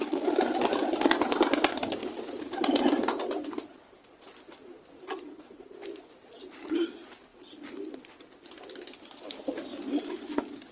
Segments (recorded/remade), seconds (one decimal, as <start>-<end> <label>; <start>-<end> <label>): 0.0-7.3 recorded; 7.3-8.0 remade; 8.0-10.7 recorded